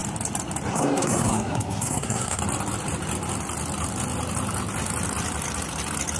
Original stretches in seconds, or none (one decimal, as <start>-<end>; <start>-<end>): 0.0-0.7; 2.4-6.2